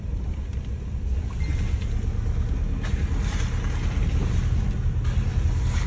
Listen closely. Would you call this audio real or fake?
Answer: real